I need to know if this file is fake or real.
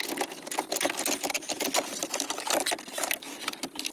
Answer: real